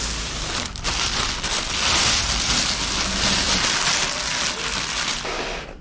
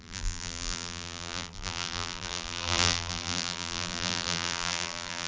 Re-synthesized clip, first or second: second